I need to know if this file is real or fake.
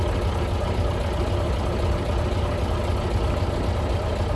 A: real